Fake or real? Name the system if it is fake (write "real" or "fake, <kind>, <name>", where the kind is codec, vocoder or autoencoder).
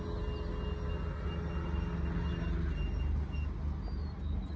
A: real